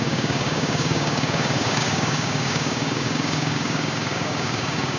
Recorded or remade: remade